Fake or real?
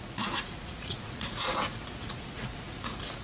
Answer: fake